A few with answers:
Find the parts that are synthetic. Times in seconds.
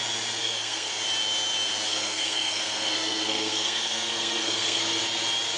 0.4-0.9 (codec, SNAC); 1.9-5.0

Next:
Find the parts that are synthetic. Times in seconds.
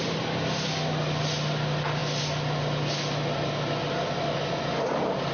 none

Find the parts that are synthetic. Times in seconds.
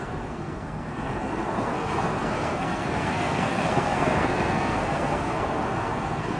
0.0-6.4 (codec, SNAC)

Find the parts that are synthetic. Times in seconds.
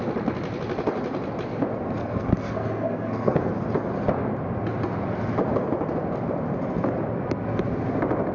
2.0-3.5 (codec, SNAC)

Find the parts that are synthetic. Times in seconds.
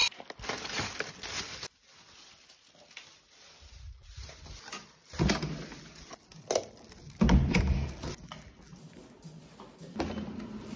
none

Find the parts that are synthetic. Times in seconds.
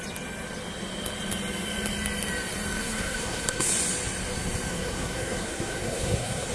2.8-3.7 (codec, SNAC); 4.7-6.5